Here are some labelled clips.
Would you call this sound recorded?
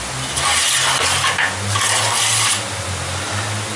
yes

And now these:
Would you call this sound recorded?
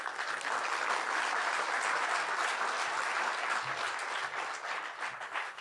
yes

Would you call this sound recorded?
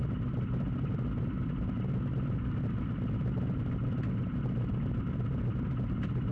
yes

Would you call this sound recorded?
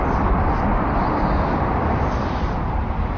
yes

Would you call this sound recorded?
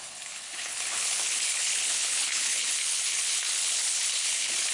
no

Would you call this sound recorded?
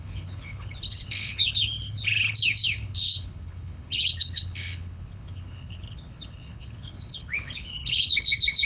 no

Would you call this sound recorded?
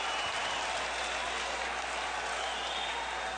yes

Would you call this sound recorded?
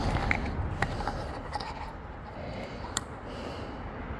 yes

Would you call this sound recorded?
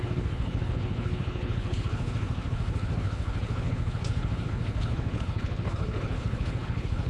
no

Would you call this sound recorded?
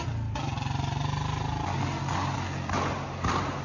yes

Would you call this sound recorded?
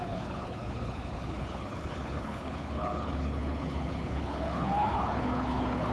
no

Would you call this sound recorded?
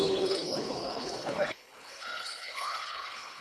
no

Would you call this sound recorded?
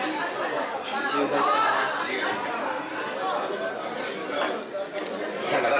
yes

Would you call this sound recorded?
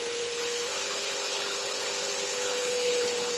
no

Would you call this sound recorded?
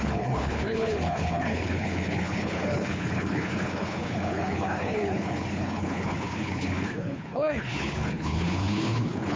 no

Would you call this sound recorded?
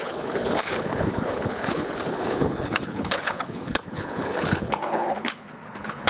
no